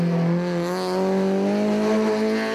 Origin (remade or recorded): recorded